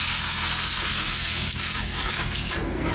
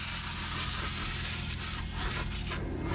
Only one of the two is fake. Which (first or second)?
first